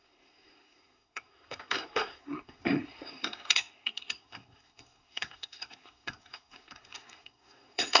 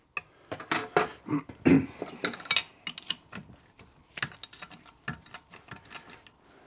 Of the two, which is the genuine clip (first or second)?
second